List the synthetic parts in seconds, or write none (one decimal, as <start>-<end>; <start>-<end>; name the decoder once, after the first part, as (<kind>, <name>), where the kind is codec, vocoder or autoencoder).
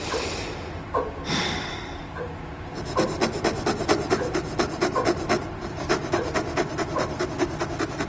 none